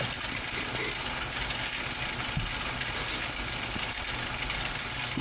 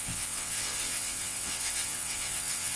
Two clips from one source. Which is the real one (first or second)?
first